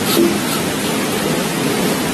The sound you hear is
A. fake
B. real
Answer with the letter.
A